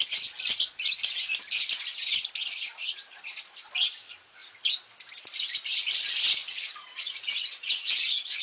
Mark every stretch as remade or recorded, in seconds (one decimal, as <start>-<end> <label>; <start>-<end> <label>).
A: 0.0-2.7 recorded; 2.7-3.2 remade; 3.2-6.4 recorded; 6.4-8.4 remade